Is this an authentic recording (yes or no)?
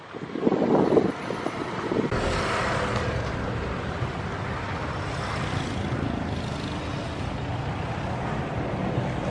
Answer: yes